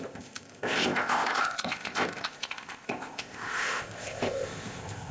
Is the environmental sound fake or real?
fake